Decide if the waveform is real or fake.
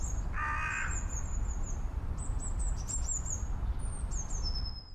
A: real